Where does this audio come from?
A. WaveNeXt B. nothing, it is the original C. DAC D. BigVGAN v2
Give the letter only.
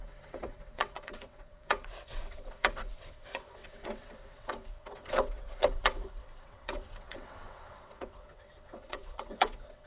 A